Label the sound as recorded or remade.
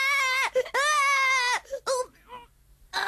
recorded